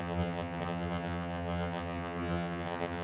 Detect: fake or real fake